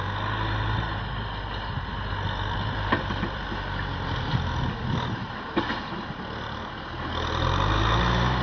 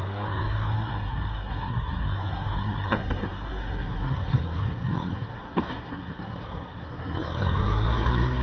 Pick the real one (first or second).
first